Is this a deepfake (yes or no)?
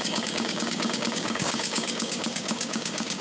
yes